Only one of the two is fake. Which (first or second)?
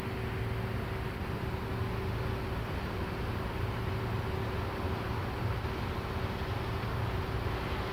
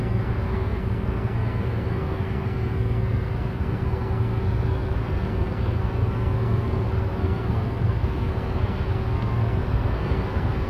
second